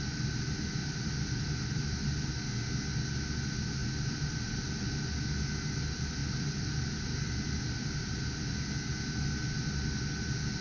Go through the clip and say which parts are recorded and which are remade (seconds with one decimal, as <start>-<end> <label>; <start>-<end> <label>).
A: 0.0-0.8 recorded; 0.8-2.3 remade; 2.3-3.8 recorded; 3.8-4.9 remade; 4.9-6.2 recorded; 6.2-8.2 remade; 8.2-10.6 recorded